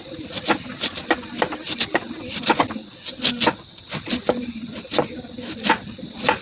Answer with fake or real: real